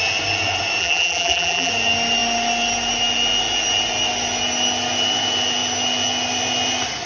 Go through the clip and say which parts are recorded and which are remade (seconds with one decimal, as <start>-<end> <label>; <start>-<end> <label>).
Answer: 0.0-0.8 recorded; 0.8-1.7 remade; 1.7-7.1 recorded